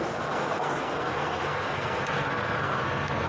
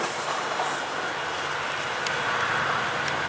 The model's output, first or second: first